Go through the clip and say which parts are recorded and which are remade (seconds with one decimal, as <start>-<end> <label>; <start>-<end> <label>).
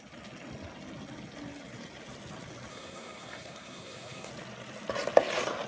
0.0-2.7 recorded; 2.7-4.3 remade; 4.3-5.7 recorded